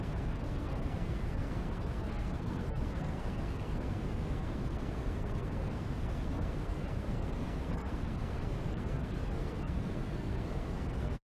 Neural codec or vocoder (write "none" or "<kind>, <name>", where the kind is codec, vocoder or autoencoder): codec, SNAC